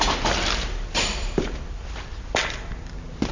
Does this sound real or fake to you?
real